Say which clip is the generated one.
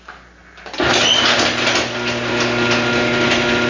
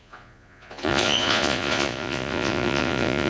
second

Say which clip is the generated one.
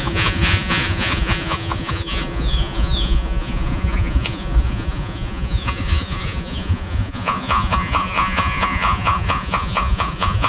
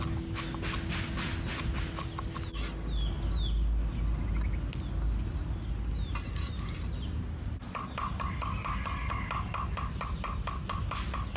first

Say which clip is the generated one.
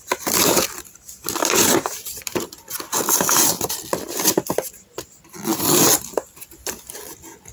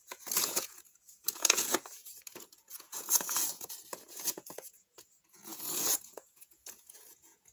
second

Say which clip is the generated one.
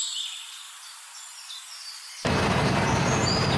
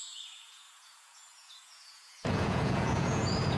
second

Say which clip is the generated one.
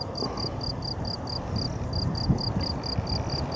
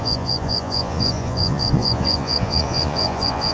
second